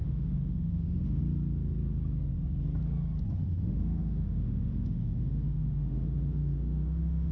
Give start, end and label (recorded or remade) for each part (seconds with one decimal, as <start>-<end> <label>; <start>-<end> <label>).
0.0-1.2 remade; 1.2-3.4 recorded; 3.4-7.3 remade